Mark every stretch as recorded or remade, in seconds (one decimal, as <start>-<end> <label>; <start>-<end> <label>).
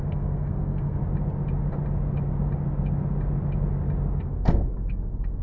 0.0-1.0 remade; 1.0-4.2 recorded; 4.2-5.4 remade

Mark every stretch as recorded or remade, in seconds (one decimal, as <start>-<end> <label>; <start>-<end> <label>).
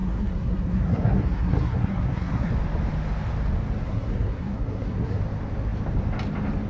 0.0-2.5 remade; 2.5-3.8 recorded; 3.8-5.2 remade; 5.2-6.7 recorded